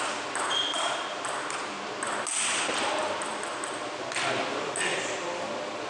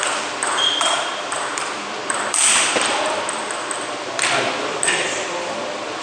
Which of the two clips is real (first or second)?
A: first